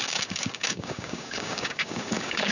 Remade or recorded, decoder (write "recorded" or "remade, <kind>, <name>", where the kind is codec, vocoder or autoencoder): remade, codec, DAC